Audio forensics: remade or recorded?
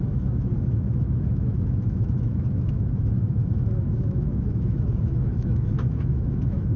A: remade